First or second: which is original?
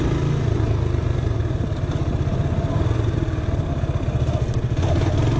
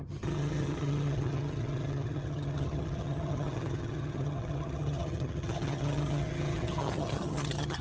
first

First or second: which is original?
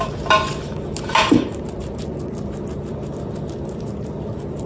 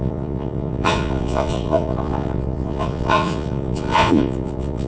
first